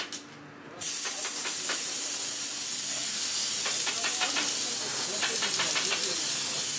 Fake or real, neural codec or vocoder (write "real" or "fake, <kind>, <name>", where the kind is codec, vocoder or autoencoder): real